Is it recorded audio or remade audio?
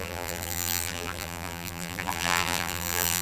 remade